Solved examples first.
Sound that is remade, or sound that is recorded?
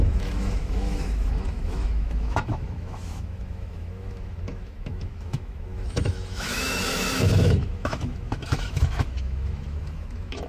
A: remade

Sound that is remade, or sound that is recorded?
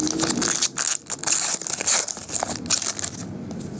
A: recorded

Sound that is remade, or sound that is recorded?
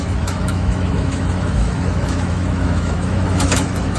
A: remade